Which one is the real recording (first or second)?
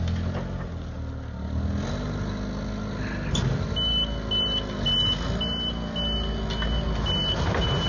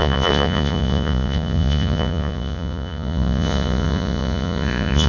first